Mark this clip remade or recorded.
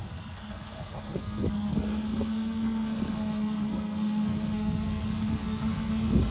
remade